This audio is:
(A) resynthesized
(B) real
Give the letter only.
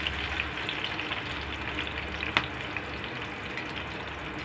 B